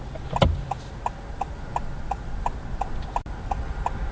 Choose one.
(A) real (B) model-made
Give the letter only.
A